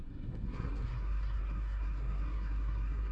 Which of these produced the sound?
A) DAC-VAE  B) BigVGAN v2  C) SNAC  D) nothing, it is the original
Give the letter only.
C